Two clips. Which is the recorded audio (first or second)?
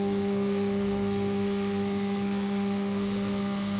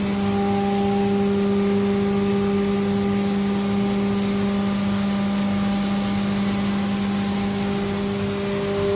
second